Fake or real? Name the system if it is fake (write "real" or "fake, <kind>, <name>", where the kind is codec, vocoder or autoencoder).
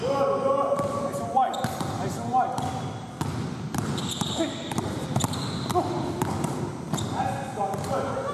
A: real